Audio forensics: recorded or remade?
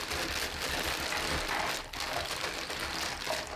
recorded